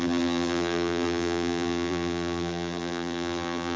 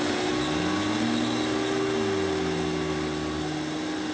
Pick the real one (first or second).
second